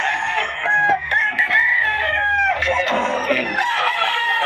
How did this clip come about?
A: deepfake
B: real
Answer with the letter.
A